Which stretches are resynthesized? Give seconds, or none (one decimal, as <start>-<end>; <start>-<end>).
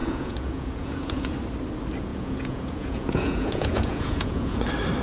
0.0-1.3; 2.1-4.6